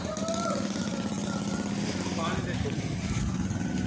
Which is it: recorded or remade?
recorded